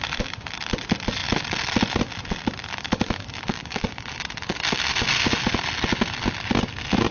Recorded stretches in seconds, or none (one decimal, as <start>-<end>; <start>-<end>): 0.0-2.7; 3.9-7.1

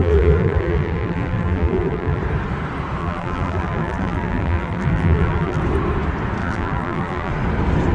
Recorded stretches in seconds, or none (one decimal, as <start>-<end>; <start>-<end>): 2.2-3.0; 5.6-6.4; 7.3-7.9

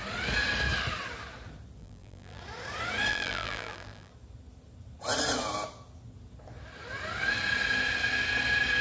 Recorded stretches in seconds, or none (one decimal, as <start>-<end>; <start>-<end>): 0.0-1.8; 2.4-3.1; 4.1-8.8

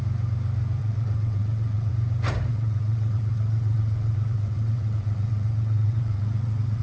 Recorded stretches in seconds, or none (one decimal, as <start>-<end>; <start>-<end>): 0.0-0.8; 1.9-2.5

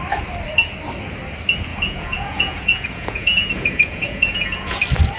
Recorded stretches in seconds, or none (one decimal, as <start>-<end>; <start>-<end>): 0.0-1.7; 4.8-5.2

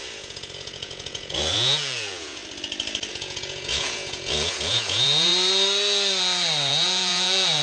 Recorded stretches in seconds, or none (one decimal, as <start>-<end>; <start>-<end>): 2.4-3.1; 5.3-6.7

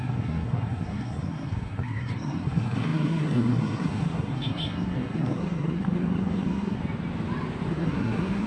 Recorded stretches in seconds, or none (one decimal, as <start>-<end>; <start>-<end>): 6.8-7.7

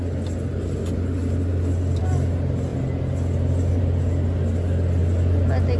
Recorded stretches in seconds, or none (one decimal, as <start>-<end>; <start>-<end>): 0.0-5.8